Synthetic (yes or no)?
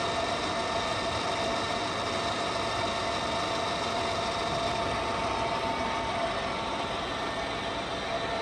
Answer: no